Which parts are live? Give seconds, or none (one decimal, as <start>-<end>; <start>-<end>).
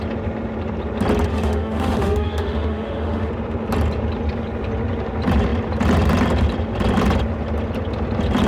0.0-1.3; 3.3-8.5